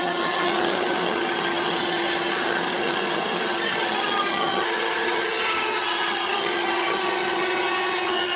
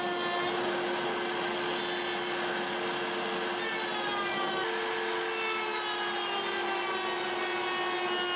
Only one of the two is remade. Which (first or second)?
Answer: first